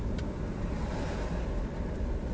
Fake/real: real